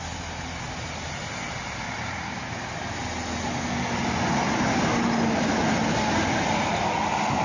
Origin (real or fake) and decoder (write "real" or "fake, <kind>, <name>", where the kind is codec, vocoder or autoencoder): real